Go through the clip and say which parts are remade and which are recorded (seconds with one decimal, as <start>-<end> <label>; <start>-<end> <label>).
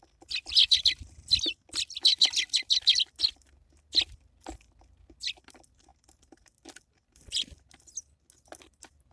0.0-9.1 recorded